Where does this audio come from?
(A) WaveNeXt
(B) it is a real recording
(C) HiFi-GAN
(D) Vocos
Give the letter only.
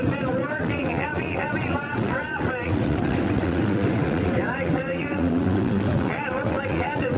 A